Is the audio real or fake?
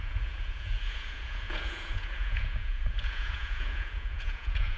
fake